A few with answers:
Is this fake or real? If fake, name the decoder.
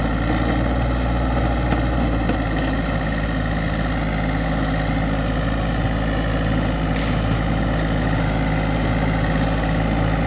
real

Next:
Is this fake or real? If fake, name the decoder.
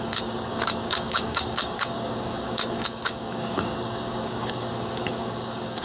fake, codec, DAC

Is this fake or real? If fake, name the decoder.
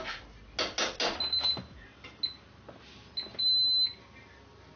real